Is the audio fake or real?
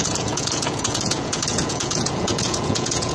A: fake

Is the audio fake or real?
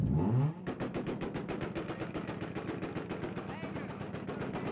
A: real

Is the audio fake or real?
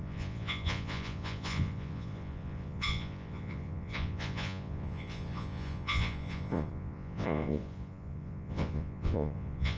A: fake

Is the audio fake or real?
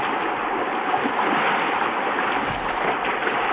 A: real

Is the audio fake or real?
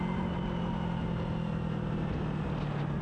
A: real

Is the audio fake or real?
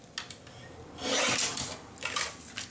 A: real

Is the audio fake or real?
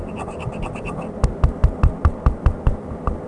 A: real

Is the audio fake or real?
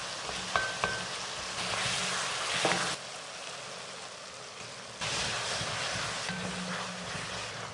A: real